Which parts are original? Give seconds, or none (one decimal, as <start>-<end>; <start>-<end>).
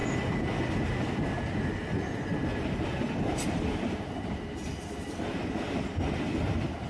0.0-6.9